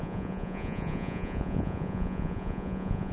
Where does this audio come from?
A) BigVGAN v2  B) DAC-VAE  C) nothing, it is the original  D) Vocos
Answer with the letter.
D